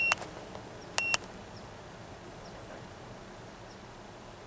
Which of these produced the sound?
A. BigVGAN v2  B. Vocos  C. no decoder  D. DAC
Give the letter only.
C